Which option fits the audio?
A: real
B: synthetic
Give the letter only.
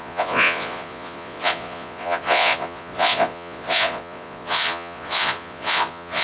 B